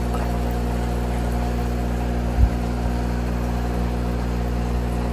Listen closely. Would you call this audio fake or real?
real